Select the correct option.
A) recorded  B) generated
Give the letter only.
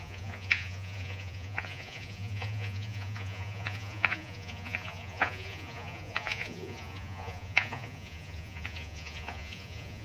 B